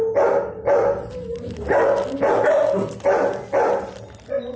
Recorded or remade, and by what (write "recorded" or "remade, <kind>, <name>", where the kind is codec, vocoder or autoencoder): recorded